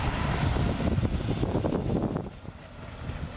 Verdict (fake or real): real